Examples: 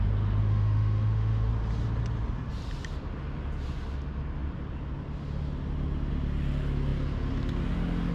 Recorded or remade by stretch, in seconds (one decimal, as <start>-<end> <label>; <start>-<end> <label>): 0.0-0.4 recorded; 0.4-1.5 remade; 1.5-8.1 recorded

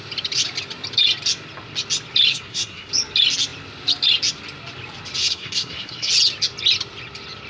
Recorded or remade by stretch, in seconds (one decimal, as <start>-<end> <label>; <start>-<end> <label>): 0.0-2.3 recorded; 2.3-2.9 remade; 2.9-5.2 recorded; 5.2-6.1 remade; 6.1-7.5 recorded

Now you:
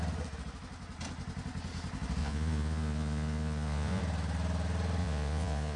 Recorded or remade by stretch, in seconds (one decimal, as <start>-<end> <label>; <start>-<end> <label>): 0.0-2.2 recorded; 2.2-4.0 remade; 4.0-5.0 recorded; 5.0-5.8 remade